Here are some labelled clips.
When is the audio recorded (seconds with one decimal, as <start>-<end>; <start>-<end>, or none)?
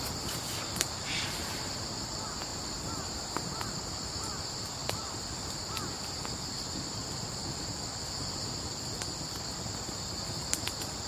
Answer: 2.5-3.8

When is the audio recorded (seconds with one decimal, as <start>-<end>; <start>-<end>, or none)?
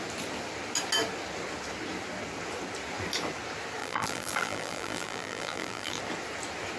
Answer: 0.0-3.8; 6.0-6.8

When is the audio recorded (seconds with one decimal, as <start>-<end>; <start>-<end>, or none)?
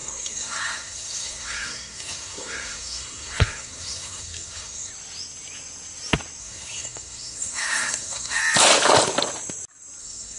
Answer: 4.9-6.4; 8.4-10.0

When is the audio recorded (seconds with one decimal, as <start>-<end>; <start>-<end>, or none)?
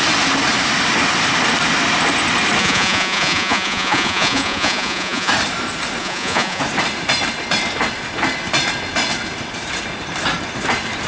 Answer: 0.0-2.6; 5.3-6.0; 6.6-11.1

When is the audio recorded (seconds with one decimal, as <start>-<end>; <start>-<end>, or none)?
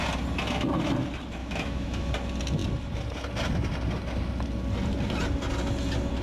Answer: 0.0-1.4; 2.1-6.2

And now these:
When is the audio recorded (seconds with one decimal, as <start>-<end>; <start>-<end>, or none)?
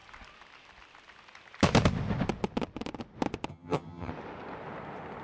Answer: 0.0-3.5; 4.1-5.2